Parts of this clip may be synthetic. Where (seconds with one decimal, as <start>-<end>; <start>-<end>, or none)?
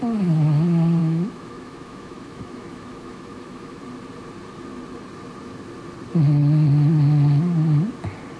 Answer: 1.0-3.8